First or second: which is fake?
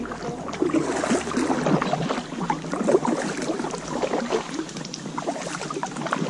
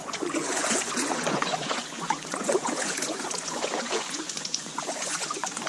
second